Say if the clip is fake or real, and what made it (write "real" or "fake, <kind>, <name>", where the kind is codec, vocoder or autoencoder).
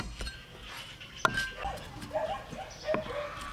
real